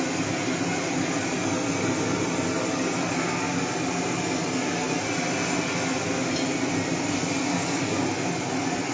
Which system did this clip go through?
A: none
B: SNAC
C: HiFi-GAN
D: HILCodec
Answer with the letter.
A